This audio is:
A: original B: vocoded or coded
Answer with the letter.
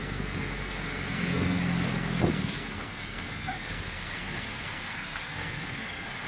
B